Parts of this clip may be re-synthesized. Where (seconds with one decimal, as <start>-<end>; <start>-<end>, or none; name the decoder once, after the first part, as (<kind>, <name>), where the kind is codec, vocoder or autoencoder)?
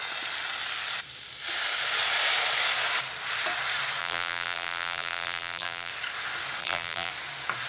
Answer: 4.0-5.9 (vocoder, BigVGAN v2); 6.6-7.1